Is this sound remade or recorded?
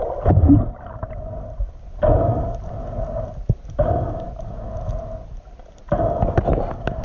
recorded